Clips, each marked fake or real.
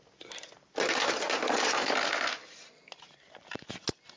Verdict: real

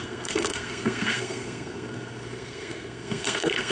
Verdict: fake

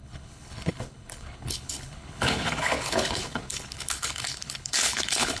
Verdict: fake